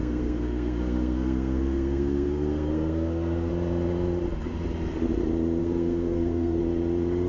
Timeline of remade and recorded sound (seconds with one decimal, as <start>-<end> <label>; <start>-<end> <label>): 0.0-3.5 remade; 3.5-5.6 recorded; 5.6-6.6 remade; 6.6-7.3 recorded